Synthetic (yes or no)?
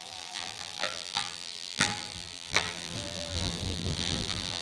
yes